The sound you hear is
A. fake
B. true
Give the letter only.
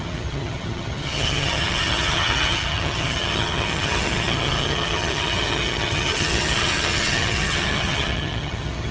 A